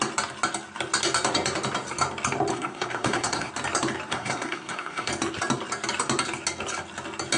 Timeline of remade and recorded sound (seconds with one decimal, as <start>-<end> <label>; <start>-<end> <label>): 0.0-2.5 recorded; 2.5-3.5 remade; 3.5-4.1 recorded; 4.1-5.1 remade; 5.1-7.4 recorded